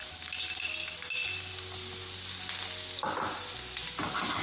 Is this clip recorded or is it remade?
recorded